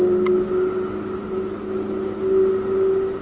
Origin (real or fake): real